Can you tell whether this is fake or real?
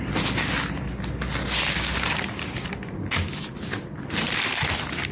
real